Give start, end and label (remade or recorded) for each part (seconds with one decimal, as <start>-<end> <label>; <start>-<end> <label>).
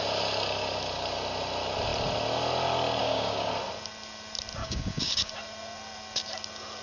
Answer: 0.0-3.0 recorded; 3.0-3.5 remade; 3.5-4.6 recorded; 4.6-5.3 remade; 5.3-6.8 recorded